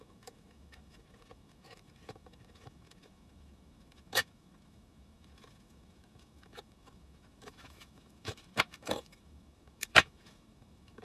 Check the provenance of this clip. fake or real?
fake